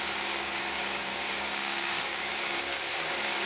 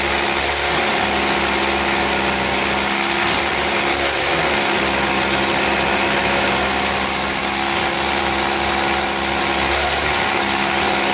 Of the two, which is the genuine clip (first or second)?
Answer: second